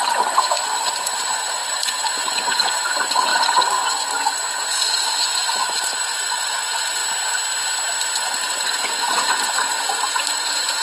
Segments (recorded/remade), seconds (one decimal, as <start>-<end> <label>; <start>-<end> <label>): 0.0-7.0 remade; 7.0-8.2 recorded; 8.2-10.8 remade